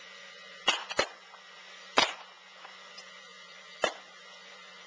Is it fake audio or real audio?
fake